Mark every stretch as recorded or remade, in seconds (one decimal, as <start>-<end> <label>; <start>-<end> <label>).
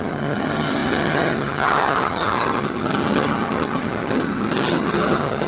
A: 0.0-5.5 remade